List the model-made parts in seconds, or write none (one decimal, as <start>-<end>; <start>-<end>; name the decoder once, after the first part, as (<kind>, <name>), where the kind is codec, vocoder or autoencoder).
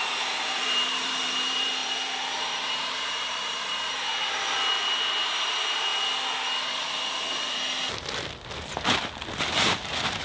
0.0-4.1 (vocoder, BigVGAN v2); 5.2-5.9; 9.4-10.2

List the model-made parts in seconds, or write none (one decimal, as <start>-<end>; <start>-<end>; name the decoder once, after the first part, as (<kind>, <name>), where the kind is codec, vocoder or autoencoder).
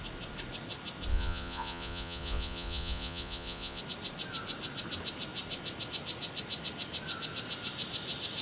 1.1-3.8 (vocoder, Vocos)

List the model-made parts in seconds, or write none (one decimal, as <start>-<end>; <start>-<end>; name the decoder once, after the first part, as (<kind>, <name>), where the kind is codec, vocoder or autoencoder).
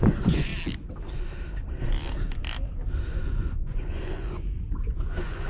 0.0-0.5 (vocoder, Vocos); 3.1-5.5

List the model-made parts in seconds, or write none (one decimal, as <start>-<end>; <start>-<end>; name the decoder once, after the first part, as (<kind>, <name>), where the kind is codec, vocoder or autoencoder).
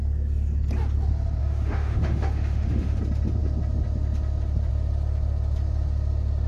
1.4-3.0 (autoencoder, DAC-VAE)